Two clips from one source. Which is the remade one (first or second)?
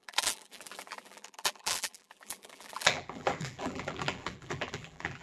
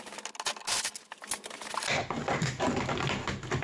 first